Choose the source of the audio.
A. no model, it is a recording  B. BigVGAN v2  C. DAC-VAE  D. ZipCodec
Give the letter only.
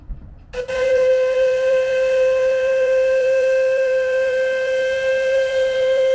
B